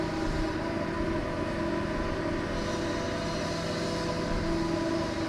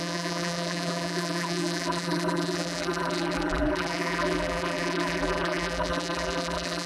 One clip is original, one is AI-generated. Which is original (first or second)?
first